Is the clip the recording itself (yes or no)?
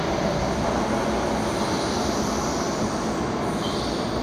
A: yes